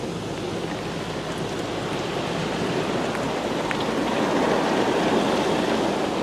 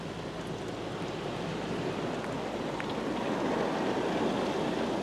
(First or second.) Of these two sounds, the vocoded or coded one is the first